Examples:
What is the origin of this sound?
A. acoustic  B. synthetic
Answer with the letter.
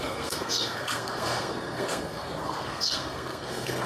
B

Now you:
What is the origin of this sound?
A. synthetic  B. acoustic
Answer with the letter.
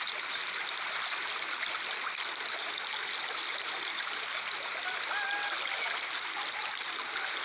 B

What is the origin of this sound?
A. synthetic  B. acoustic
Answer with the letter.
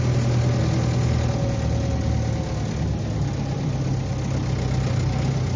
B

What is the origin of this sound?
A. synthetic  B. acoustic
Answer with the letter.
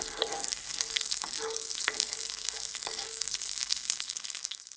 A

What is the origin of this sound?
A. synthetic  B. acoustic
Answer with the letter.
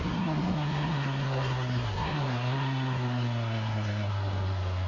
A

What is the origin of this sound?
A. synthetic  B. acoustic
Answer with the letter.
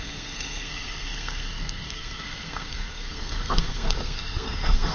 A